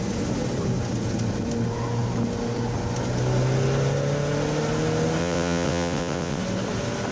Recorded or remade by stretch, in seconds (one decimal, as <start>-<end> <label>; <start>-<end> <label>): 0.0-5.2 recorded; 5.2-6.4 remade; 6.4-7.1 recorded